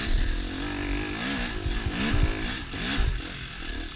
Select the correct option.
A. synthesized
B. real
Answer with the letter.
B